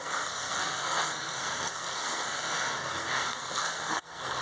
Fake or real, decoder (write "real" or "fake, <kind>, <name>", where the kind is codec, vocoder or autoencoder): fake, codec, SNAC